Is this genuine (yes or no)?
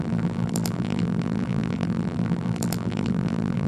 no